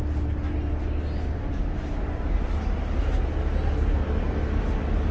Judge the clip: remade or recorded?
recorded